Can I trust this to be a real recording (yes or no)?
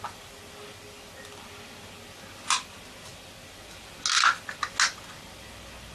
yes